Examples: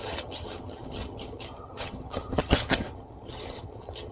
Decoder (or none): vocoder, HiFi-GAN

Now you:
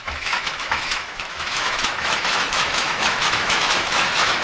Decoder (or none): autoencoder, DAC-VAE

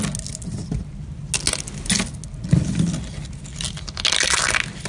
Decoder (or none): none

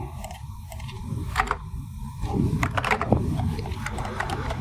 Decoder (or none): vocoder, BigVGAN v2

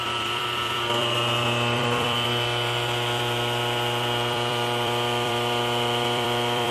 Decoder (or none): vocoder, BigVGAN v2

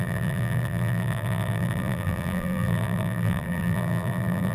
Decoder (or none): vocoder, BigVGAN v2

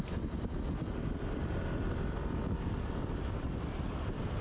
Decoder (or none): none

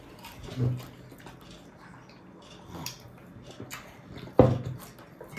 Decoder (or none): none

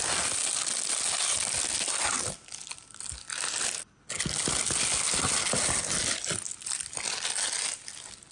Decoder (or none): none